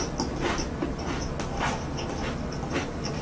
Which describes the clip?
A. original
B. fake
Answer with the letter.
A